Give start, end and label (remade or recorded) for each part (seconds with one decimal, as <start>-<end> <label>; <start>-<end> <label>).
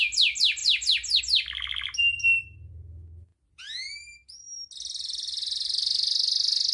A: 0.0-6.7 recorded